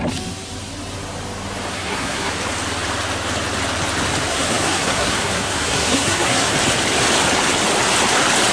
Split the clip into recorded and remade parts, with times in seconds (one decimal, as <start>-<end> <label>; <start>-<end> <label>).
0.0-1.7 recorded; 1.7-2.3 remade; 2.3-4.3 recorded; 4.3-6.5 remade; 6.5-8.5 recorded